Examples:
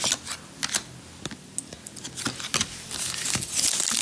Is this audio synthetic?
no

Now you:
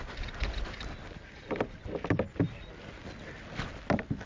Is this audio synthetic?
no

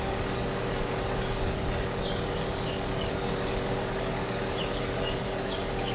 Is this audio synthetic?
yes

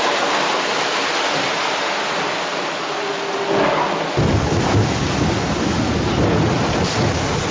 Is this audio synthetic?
no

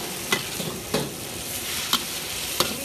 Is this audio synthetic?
no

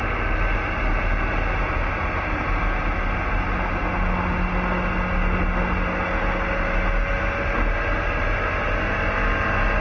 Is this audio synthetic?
no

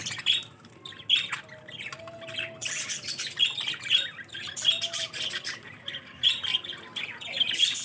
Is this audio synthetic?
no